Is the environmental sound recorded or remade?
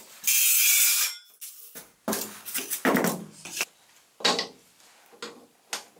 recorded